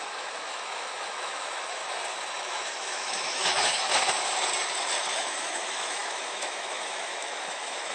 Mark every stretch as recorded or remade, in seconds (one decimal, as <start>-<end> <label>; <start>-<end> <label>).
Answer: 0.0-1.8 remade; 1.8-2.3 recorded; 2.3-3.9 remade; 3.9-5.1 recorded; 5.1-7.9 remade